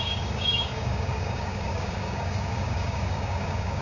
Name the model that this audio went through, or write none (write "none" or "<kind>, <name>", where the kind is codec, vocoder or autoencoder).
codec, DAC